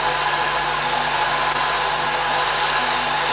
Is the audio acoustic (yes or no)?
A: yes